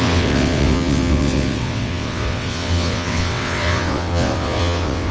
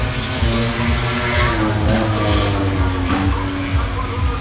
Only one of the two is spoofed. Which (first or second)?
first